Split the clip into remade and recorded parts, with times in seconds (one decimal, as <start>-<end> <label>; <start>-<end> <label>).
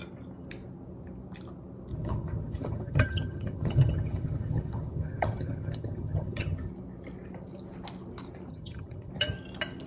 0.0-1.9 recorded; 1.9-6.7 remade; 6.7-8.5 recorded; 8.5-9.1 remade; 9.1-9.9 recorded